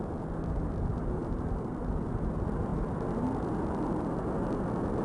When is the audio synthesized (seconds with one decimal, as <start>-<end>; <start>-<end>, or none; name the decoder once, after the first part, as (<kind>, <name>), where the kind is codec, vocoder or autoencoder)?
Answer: none